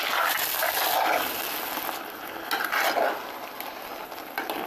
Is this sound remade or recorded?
recorded